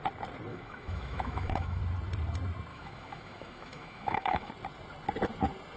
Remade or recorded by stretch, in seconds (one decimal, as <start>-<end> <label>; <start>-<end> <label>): 0.0-0.5 recorded; 0.5-1.8 remade; 1.8-2.7 recorded; 2.7-4.5 remade; 4.5-5.8 recorded